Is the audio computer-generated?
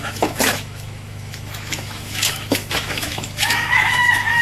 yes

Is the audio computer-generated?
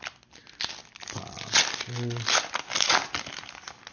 no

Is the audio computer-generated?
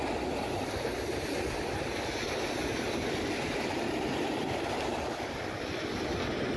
no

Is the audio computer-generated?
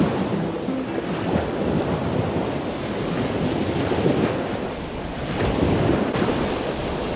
no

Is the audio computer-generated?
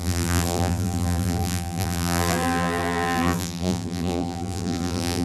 yes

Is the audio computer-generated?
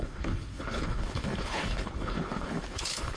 yes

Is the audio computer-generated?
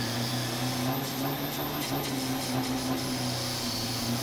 no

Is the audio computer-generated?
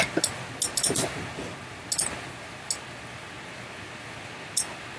no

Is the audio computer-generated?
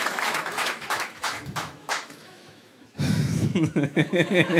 yes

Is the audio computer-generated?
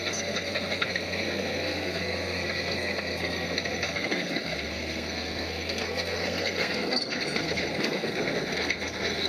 yes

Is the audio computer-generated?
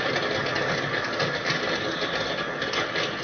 no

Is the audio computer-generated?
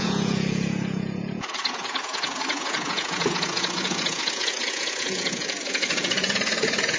yes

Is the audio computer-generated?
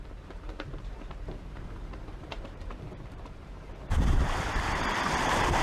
yes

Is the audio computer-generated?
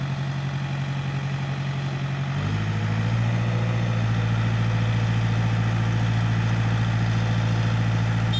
no